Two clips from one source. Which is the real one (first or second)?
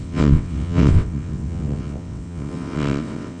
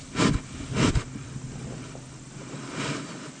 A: second